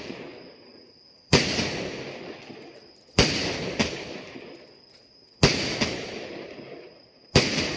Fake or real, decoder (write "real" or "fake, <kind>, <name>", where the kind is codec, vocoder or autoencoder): real